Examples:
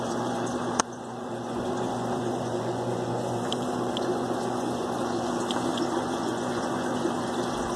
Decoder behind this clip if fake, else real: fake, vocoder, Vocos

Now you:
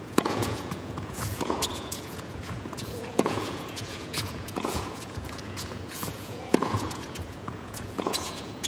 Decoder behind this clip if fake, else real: fake, vocoder, Vocos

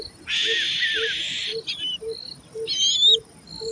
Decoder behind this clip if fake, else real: real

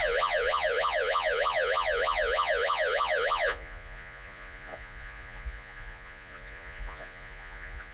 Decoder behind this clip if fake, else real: fake, vocoder, Vocos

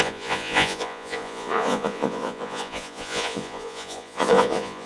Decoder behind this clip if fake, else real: fake, vocoder, Vocos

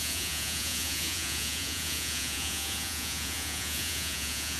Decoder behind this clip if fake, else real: fake, vocoder, Vocos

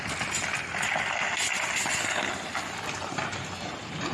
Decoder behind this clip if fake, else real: real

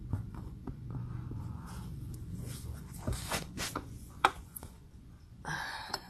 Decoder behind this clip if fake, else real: fake, vocoder, Vocos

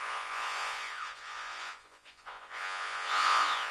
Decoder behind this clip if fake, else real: fake, vocoder, Vocos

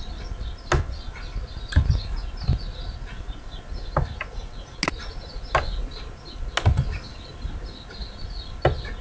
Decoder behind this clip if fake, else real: real